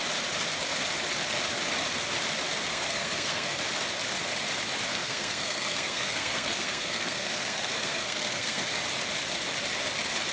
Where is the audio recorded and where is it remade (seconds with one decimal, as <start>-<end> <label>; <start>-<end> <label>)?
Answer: 0.0-2.7 recorded; 2.7-3.6 remade; 3.6-4.9 recorded; 4.9-8.6 remade; 8.6-10.3 recorded